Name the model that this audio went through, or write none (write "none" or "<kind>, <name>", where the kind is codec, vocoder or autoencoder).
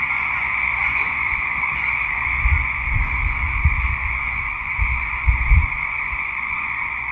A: vocoder, Vocos